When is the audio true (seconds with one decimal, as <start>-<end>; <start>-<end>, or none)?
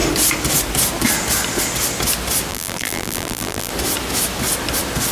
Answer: 0.0-2.5; 3.7-5.1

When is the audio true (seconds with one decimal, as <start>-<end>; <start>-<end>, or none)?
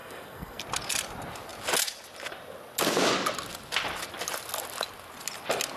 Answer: 0.6-5.8